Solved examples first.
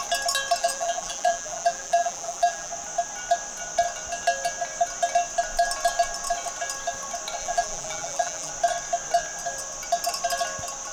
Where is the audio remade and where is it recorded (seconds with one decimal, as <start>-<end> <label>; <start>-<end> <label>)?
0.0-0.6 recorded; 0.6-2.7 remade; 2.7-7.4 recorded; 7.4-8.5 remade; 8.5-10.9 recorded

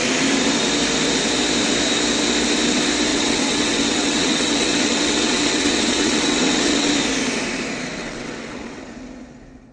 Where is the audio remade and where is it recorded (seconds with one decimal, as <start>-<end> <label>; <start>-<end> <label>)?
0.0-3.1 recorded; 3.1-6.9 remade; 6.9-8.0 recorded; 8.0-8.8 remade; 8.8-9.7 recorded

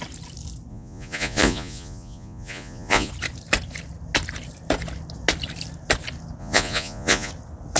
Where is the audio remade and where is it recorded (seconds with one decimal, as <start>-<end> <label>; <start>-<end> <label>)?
0.0-0.7 recorded; 0.7-3.1 remade; 3.1-6.4 recorded; 6.4-7.3 remade; 7.3-7.8 recorded

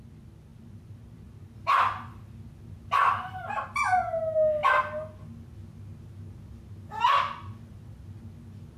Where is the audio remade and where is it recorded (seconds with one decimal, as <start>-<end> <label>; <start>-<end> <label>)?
0.0-0.5 recorded; 0.5-3.5 remade; 3.5-8.8 recorded

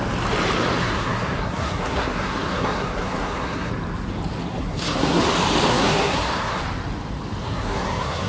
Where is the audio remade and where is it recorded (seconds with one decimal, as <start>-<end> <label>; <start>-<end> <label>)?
0.0-0.8 recorded; 0.8-3.7 remade; 3.7-4.6 recorded; 4.6-5.2 remade; 5.2-5.7 recorded; 5.7-6.6 remade; 6.6-7.4 recorded; 7.4-8.3 remade

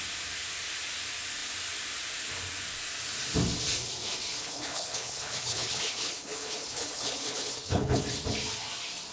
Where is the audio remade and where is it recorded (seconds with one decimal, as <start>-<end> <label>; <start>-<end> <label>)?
0.0-4.4 recorded; 4.4-8.0 remade; 8.0-9.1 recorded

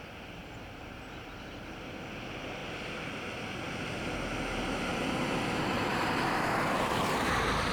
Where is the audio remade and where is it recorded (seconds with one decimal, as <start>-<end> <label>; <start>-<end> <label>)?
0.0-0.4 recorded; 0.4-2.0 remade; 2.0-4.5 recorded; 4.5-7.7 remade

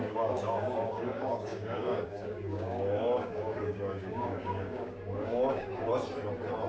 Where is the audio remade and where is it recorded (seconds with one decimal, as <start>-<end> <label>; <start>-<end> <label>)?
0.0-5.9 remade; 5.9-6.7 recorded